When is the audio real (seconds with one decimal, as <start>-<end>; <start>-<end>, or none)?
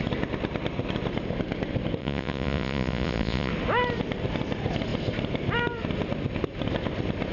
0.0-2.0; 3.5-7.3